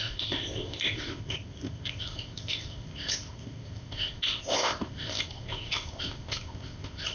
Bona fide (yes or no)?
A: no